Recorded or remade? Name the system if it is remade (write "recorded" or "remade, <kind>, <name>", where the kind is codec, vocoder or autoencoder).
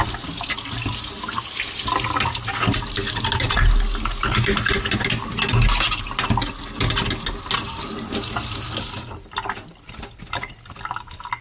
recorded